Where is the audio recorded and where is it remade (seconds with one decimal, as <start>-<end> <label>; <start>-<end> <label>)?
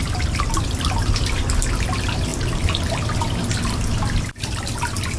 0.0-5.2 recorded